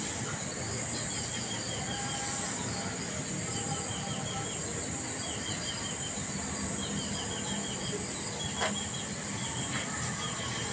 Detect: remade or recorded recorded